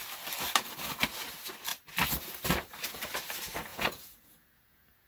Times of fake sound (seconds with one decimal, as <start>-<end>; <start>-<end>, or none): 3.7-5.1